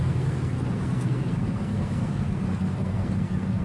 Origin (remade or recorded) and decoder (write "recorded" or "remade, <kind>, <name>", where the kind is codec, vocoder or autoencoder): remade, codec, SNAC